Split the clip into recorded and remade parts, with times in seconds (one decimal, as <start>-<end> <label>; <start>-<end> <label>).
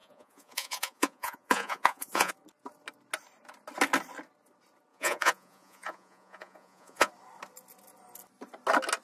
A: 0.0-2.3 remade; 2.3-4.9 recorded; 4.9-7.1 remade; 7.1-9.0 recorded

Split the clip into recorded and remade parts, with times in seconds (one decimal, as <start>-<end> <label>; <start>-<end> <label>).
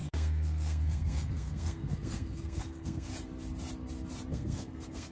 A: 0.0-3.1 remade; 3.1-4.3 recorded; 4.3-5.1 remade